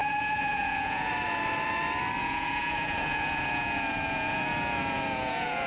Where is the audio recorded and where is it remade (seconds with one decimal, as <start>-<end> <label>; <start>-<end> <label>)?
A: 0.0-1.1 remade; 1.1-2.2 recorded; 2.2-5.7 remade